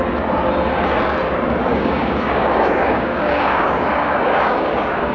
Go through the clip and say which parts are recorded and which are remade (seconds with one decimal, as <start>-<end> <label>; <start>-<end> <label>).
0.0-1.7 recorded; 1.7-5.1 remade